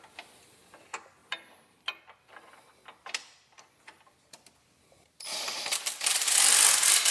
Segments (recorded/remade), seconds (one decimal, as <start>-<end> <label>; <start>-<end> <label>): 0.0-1.2 recorded; 1.2-2.0 remade; 2.0-3.0 recorded; 3.0-6.5 remade; 6.5-7.1 recorded